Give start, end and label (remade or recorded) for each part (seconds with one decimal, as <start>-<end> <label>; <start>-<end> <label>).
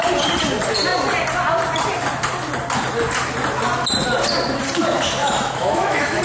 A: 0.0-5.2 recorded; 5.2-6.2 remade